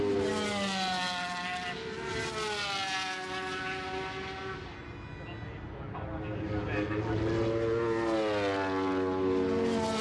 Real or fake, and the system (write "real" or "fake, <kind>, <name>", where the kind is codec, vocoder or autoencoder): real